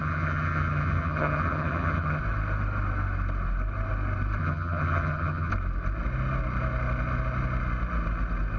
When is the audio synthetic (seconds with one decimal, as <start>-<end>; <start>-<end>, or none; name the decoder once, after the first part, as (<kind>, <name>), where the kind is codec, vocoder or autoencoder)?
0.0-2.2 (vocoder, HiFi-GAN); 4.4-5.5